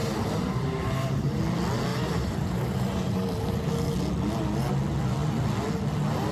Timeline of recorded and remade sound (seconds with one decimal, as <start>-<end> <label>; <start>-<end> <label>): 0.0-1.4 remade; 1.4-1.9 recorded; 1.9-3.7 remade; 3.7-6.3 recorded

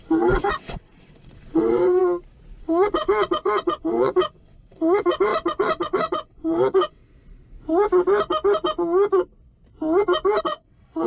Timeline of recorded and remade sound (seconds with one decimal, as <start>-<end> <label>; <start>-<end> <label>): 0.0-2.0 remade; 2.0-2.6 recorded; 2.6-7.0 remade; 7.0-10.4 recorded; 10.4-11.1 remade

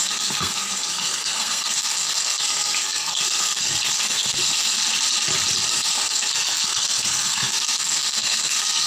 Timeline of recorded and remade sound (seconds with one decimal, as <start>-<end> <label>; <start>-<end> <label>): 0.0-4.8 remade; 4.8-5.7 recorded; 5.7-8.9 remade